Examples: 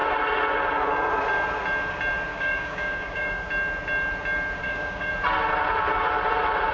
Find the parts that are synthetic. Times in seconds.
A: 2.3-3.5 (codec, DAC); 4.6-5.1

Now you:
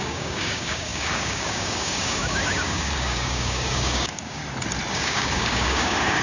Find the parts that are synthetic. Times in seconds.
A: 0.0-4.4 (codec, DAC); 4.9-6.2

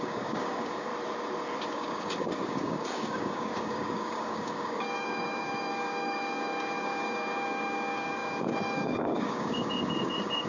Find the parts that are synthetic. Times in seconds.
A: 0.0-0.9 (codec, DAC); 1.7-10.5

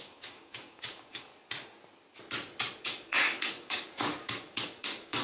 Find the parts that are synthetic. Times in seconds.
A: 0.0-1.3 (codec, DAC); 2.8-5.2

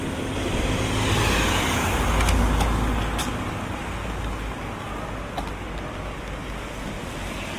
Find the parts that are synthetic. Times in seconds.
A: none